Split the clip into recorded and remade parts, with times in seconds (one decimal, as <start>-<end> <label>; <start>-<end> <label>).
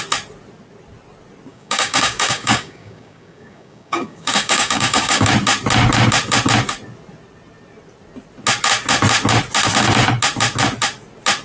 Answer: 0.0-1.5 recorded; 1.5-5.3 remade; 5.3-11.4 recorded